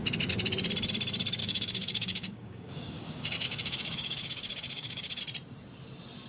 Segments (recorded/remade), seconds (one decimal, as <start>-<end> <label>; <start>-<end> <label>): 0.0-1.4 recorded; 1.4-5.2 remade; 5.2-6.3 recorded